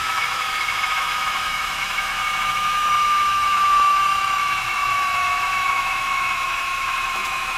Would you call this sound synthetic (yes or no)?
yes